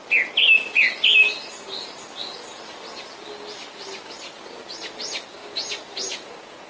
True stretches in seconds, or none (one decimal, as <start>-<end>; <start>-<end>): 0.0-5.4